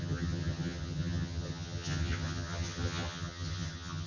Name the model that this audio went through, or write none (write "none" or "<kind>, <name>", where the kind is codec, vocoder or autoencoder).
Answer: vocoder, HiFi-GAN